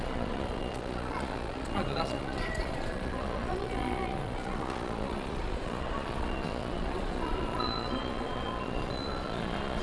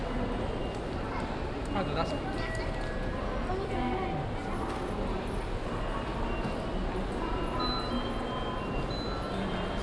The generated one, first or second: first